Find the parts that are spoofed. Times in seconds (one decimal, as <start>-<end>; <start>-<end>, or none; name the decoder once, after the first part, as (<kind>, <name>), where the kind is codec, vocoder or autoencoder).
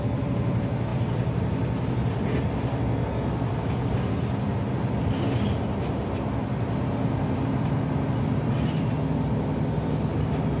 none